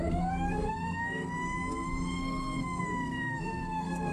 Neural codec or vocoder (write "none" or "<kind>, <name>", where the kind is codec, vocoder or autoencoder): codec, SNAC